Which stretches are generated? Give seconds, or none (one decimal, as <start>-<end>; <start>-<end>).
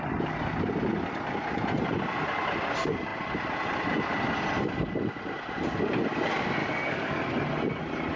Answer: 6.6-7.2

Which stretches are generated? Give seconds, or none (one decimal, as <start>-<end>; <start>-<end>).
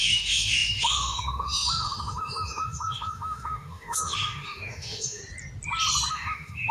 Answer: 0.0-5.2; 6.1-6.7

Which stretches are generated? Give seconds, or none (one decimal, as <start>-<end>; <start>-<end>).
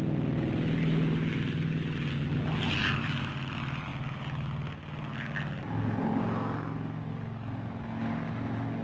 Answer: 2.8-3.3